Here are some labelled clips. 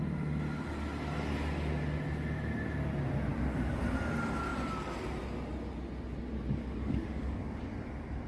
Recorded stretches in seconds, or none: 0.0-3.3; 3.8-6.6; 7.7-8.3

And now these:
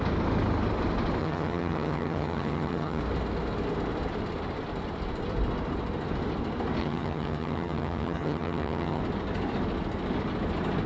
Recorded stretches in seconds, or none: 0.0-1.2; 3.0-6.8; 9.0-10.9

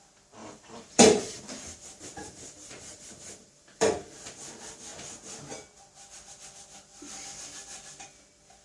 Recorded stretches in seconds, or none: 0.0-0.4; 1.4-2.2; 3.9-8.6

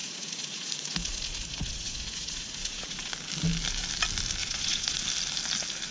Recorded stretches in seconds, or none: 3.1-4.4; 5.0-5.9

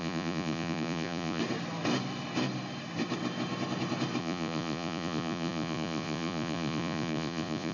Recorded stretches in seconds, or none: 1.4-4.2